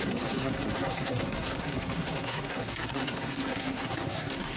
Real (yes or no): no